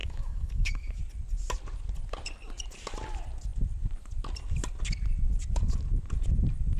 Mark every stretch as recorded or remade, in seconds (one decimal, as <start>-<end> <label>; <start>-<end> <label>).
0.0-1.0 remade; 1.0-6.8 recorded